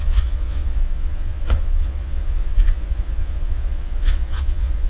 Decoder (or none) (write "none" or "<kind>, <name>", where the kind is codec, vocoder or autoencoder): vocoder, Vocos